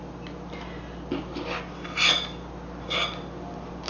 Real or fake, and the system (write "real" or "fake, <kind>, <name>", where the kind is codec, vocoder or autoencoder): real